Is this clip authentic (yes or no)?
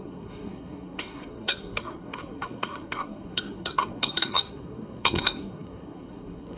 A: no